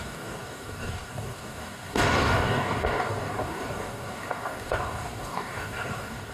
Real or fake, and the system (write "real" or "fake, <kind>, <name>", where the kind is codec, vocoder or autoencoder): fake, codec, DAC